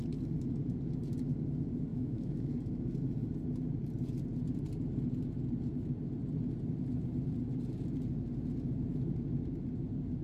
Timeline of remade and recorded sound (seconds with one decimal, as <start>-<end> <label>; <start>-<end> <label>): 0.0-1.9 recorded; 1.9-2.5 remade; 2.5-10.2 recorded